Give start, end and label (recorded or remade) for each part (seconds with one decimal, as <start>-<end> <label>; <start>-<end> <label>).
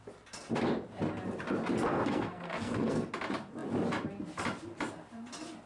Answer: 0.0-1.9 recorded; 1.9-3.1 remade; 3.1-5.7 recorded